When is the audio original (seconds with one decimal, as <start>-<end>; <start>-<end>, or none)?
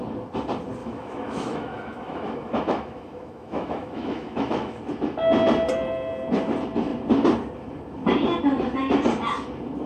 0.0-0.8; 4.8-9.9